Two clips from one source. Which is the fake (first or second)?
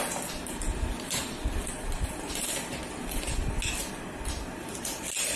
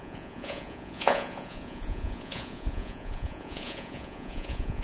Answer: second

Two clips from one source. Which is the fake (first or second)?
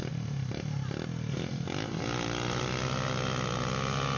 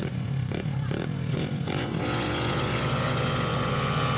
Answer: second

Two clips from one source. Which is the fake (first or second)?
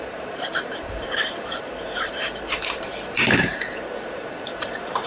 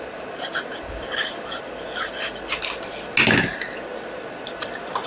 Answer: first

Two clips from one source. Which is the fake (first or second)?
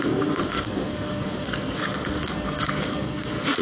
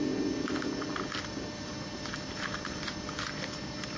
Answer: first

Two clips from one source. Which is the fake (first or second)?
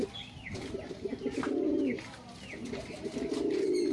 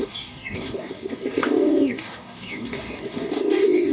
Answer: second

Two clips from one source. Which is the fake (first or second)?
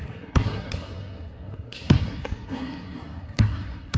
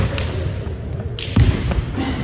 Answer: first